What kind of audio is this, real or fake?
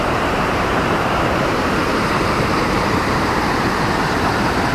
fake